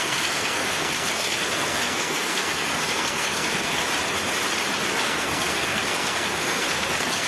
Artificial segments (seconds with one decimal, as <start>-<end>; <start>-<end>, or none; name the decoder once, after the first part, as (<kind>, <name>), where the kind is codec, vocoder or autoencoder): 0.0-3.8 (codec, SNAC); 4.9-7.3